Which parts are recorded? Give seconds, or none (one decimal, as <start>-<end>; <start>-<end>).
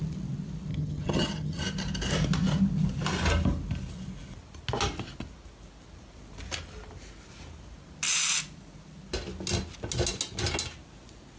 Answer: 0.0-0.7; 1.6-11.4